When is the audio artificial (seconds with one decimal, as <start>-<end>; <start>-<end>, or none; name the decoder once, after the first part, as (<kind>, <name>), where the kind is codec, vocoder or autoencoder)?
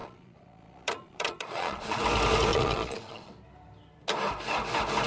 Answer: 0.0-2.0 (vocoder, Vocos); 2.5-3.3